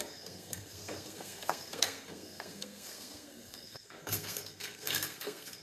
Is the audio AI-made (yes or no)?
yes